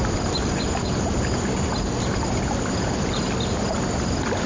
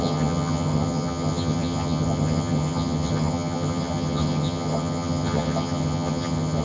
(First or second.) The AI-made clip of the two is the second